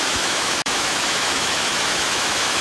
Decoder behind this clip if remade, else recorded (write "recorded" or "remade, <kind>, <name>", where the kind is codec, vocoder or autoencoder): remade, autoencoder, DAC-VAE